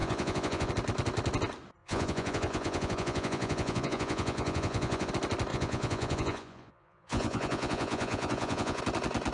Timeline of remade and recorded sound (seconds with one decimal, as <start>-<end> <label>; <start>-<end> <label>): 0.0-0.7 remade; 0.7-1.8 recorded; 1.8-5.1 remade; 5.1-5.5 recorded; 5.5-8.8 remade; 8.8-9.3 recorded